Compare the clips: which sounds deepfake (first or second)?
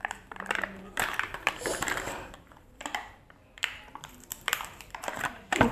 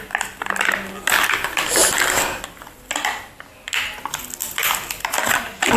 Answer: first